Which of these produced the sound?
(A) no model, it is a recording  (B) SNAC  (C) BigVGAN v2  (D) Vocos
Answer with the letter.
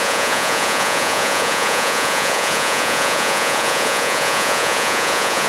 D